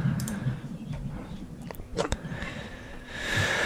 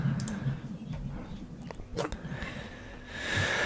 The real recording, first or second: second